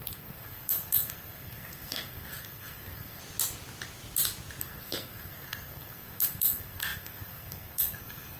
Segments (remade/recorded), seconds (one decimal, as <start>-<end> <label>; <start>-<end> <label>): 0.0-3.2 remade; 3.2-4.6 recorded; 4.6-8.4 remade